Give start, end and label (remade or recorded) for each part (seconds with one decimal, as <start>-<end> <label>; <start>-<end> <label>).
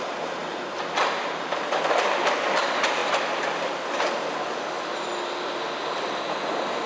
0.0-3.0 recorded; 3.0-3.9 remade; 3.9-6.9 recorded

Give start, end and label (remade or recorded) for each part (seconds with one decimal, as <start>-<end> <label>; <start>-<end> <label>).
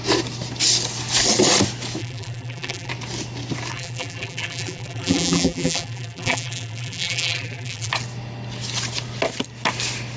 0.0-2.0 recorded; 2.0-2.9 remade; 2.9-3.7 recorded; 3.7-7.9 remade; 7.9-10.2 recorded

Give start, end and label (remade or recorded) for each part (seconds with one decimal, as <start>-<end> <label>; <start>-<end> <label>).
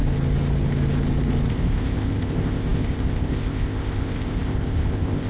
0.0-1.5 recorded; 1.5-5.3 remade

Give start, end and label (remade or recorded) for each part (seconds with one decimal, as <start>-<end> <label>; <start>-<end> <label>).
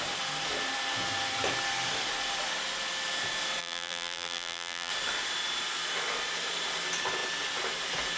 0.0-3.6 recorded; 3.6-4.9 remade; 4.9-8.2 recorded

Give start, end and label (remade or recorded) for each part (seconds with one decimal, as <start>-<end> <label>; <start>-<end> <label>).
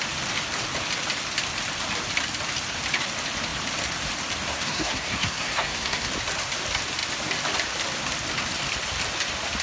0.0-4.5 recorded; 4.5-6.1 remade; 6.1-9.6 recorded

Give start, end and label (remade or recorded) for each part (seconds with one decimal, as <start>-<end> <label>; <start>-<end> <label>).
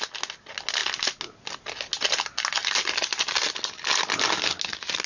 0.0-5.1 recorded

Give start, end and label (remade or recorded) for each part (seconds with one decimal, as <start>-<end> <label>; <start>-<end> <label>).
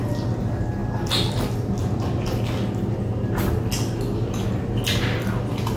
0.0-5.8 recorded